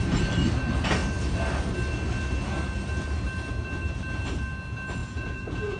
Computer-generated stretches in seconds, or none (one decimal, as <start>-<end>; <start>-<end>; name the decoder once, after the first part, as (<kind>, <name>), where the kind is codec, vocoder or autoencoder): 5.0-5.8 (vocoder, Vocos)